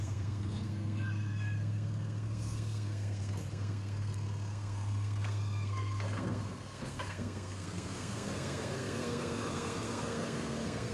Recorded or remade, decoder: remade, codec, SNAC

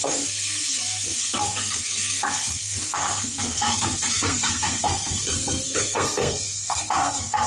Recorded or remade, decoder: remade, codec, SNAC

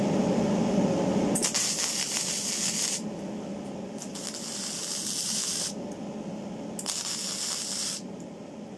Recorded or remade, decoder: recorded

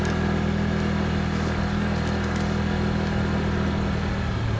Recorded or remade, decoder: recorded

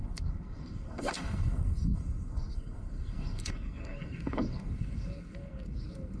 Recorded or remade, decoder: remade, codec, SNAC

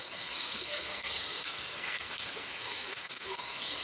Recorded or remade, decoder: remade, codec, SNAC